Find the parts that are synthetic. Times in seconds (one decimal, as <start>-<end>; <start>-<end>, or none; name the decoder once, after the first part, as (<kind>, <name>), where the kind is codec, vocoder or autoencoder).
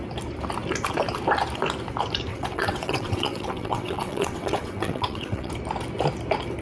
2.3-5.5 (vocoder, WaveNeXt)